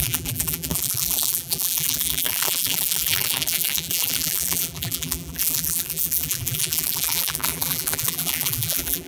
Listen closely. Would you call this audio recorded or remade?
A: remade